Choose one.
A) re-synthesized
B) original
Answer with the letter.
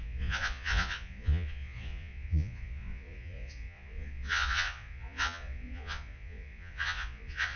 A